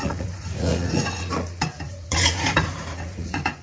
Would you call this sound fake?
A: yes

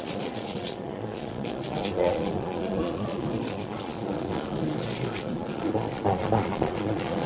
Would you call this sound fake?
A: yes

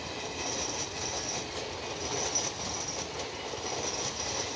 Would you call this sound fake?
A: no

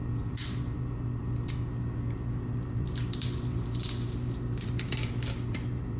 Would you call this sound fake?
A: yes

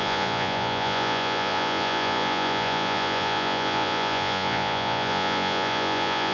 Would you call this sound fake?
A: yes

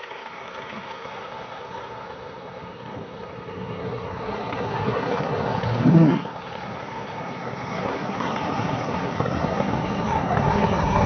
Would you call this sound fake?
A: yes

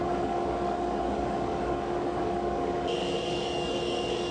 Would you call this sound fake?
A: yes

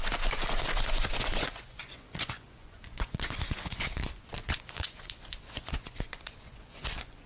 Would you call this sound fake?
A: yes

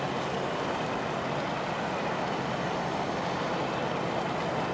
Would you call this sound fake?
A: no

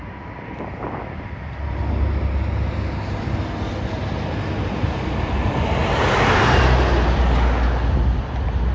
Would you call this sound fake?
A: no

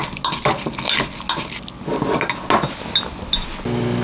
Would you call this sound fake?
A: no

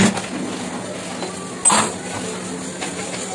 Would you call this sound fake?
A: no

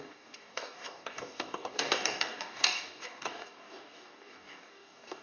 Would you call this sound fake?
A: yes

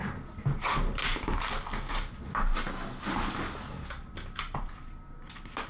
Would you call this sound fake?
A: no